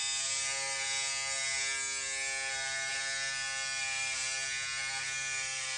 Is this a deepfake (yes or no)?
no